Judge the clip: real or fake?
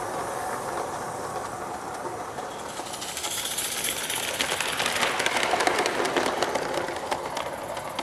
real